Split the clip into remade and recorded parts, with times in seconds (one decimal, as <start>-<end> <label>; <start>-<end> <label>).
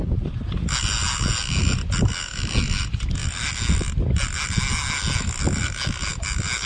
0.0-6.7 recorded